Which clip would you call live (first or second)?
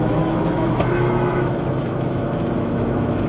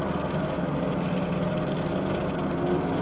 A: second